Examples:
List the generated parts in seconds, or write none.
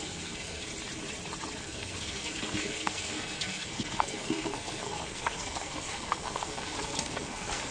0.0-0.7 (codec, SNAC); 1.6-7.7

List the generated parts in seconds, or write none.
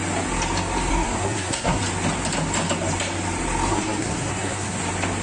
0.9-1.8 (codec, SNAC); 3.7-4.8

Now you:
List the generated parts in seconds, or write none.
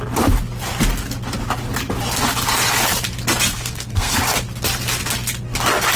3.5-4.1 (codec, SNAC)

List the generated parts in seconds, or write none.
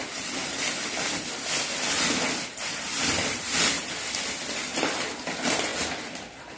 0.0-0.4 (vocoder, BigVGAN v2); 2.6-5.7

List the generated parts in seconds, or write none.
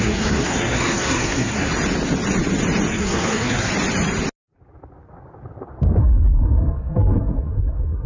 0.0-1.7 (codec, SNAC); 2.9-3.7; 6.0-8.1